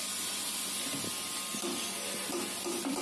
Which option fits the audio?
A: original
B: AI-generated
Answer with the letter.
A